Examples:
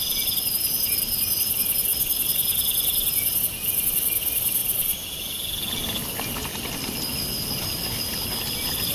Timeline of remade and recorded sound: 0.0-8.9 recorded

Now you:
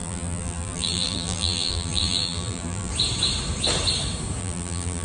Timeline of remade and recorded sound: 0.0-2.9 remade; 2.9-4.4 recorded; 4.4-5.0 remade

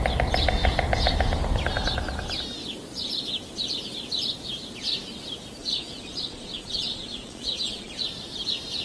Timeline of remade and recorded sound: 0.0-5.6 recorded; 5.6-8.0 remade; 8.0-8.8 recorded

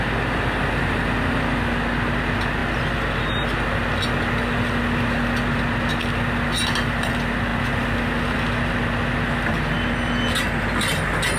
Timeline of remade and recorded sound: 0.0-11.4 recorded

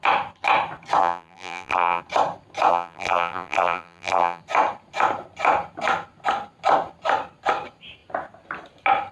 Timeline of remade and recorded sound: 0.0-1.0 recorded; 1.0-2.0 remade; 2.0-2.7 recorded; 2.7-4.4 remade; 4.4-9.1 recorded

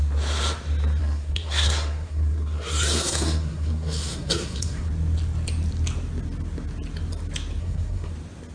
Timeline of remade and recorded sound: 0.0-1.0 recorded; 1.0-4.9 remade; 4.9-7.6 recorded; 7.6-8.1 remade; 8.1-8.5 recorded

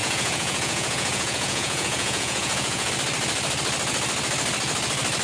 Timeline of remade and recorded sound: 0.0-2.9 remade; 2.9-5.2 recorded

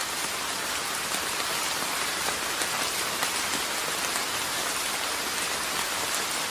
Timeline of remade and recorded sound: 0.0-6.5 recorded